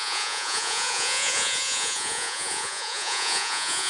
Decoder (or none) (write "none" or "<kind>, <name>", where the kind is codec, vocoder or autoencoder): vocoder, Vocos